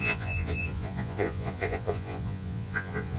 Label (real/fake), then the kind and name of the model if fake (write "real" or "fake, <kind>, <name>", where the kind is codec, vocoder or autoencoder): fake, vocoder, Vocos